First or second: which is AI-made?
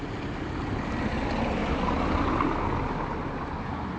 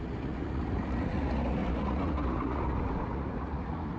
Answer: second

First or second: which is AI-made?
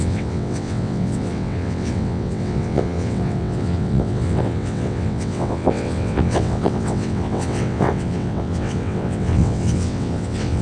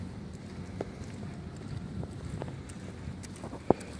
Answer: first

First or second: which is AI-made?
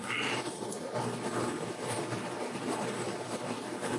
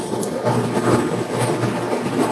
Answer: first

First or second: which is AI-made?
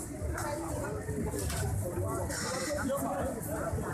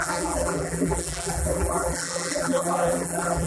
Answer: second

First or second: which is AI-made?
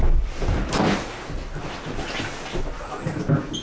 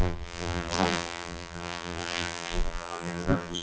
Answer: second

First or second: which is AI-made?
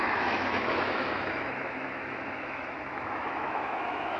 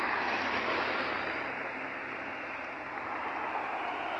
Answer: first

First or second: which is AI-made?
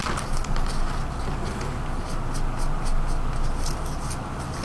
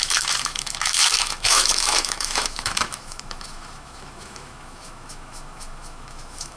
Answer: second